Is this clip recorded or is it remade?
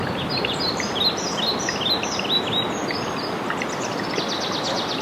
recorded